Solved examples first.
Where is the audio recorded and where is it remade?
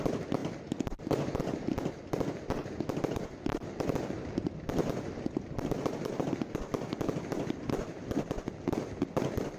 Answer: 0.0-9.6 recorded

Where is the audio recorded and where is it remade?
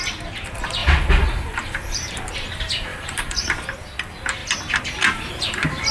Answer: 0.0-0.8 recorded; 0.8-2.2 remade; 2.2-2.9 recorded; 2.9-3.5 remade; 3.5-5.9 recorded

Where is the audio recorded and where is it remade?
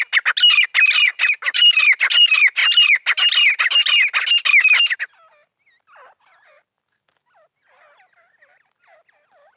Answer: 0.0-9.6 recorded